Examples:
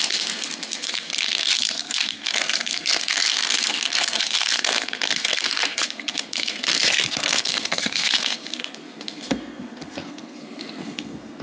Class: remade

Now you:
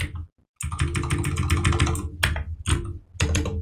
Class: recorded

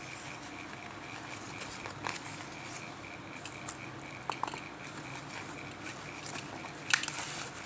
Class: recorded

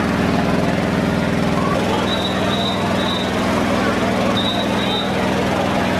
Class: recorded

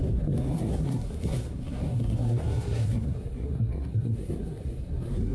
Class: remade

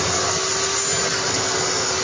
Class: recorded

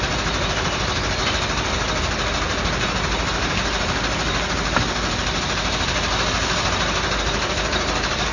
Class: recorded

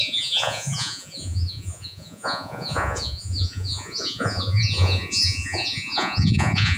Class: remade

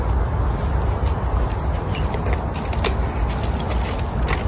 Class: recorded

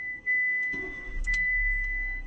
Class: remade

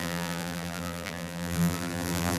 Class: remade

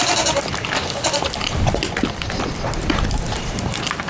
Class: recorded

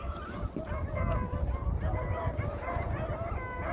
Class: recorded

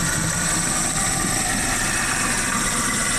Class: recorded